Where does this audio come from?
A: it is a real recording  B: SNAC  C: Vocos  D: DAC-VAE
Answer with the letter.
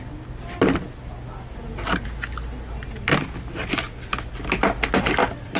A